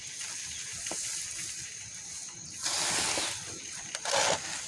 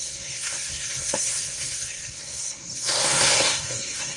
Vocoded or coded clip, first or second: second